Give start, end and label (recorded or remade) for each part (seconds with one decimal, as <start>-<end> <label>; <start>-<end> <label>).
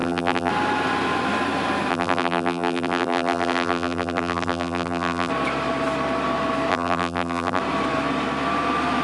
0.0-0.5 remade; 0.5-1.9 recorded; 1.9-5.3 remade; 5.3-6.7 recorded; 6.7-7.6 remade; 7.6-9.0 recorded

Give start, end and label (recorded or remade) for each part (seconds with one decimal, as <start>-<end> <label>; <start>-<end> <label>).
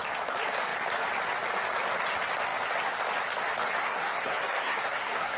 0.0-3.8 recorded; 3.8-5.4 remade